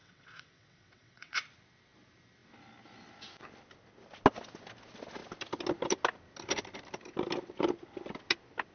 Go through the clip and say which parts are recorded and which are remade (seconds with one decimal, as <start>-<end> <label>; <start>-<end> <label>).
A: 0.0-1.4 remade; 1.4-8.7 recorded